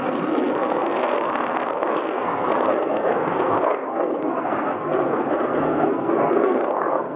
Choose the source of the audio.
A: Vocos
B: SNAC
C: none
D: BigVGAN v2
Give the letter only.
B